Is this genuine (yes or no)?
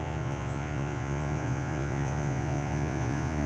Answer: no